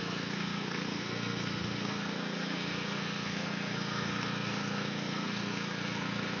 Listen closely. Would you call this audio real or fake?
fake